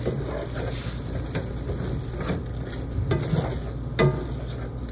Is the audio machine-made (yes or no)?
no